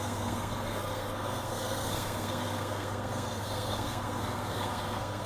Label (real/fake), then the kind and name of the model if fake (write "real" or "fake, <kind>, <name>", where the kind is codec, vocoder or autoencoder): fake, codec, SNAC